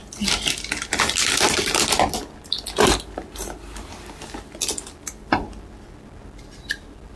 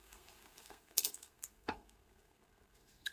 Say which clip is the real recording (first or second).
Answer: first